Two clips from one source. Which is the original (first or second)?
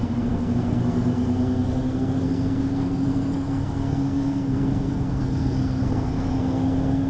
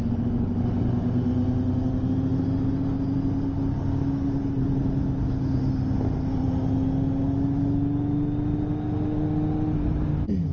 second